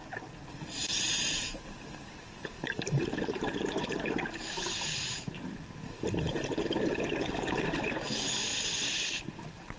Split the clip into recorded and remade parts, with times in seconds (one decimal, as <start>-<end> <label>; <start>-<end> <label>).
0.0-1.2 recorded; 1.2-5.5 remade; 5.5-9.8 recorded